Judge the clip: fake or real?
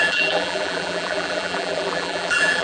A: fake